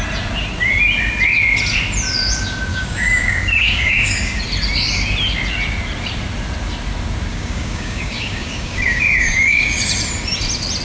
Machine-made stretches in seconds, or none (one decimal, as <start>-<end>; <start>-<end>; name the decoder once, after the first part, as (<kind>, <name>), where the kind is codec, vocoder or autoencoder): 2.7-4.4 (codec, DAC); 7.3-9.8